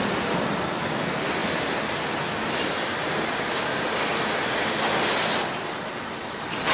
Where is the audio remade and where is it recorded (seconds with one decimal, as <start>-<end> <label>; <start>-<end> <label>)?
0.0-6.7 recorded